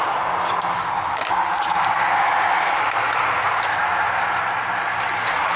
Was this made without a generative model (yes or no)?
yes